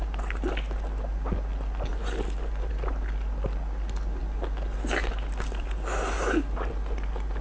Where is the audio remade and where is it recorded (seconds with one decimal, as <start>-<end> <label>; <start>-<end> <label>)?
0.0-7.4 recorded